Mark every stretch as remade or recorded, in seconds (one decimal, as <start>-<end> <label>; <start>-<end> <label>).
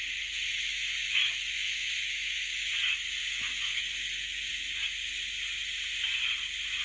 0.0-0.5 recorded; 0.5-2.7 remade; 2.7-3.2 recorded; 3.2-4.5 remade; 4.5-6.8 recorded